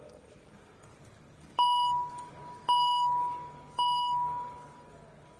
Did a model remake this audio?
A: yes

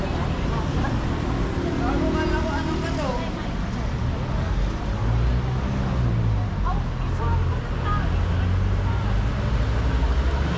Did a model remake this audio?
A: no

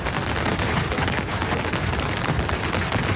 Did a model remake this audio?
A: no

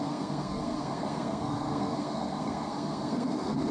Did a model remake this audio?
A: yes